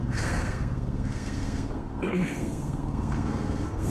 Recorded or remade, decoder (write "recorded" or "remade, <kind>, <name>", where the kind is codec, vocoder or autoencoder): remade, codec, SNAC